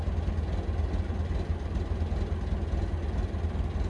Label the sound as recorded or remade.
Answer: recorded